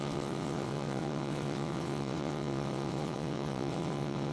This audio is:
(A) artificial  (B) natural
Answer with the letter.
A